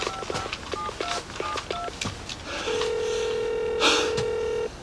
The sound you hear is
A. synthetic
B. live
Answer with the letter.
B